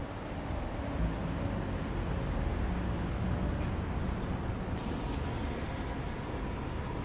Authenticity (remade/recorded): recorded